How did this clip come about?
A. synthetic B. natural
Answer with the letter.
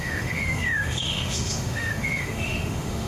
A